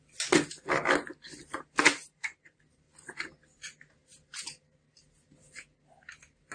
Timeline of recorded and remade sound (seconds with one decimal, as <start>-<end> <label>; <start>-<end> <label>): 0.0-1.9 recorded; 1.9-2.6 remade; 2.6-4.1 recorded; 4.1-5.0 remade; 5.0-6.5 recorded